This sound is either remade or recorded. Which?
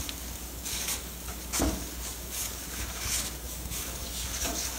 remade